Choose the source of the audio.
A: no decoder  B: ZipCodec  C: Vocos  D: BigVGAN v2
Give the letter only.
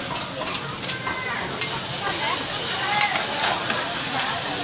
A